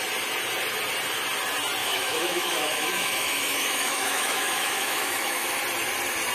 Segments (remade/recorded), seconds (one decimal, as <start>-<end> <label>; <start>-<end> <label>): 0.0-1.8 recorded; 1.8-5.6 remade; 5.6-6.3 recorded